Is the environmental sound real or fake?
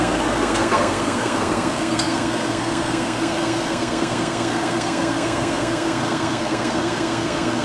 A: fake